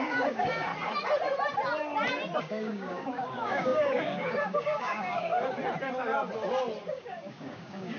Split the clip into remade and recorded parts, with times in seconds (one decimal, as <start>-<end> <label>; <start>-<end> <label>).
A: 0.0-0.7 remade; 0.7-2.4 recorded; 2.4-5.3 remade; 5.3-6.9 recorded; 6.9-8.0 remade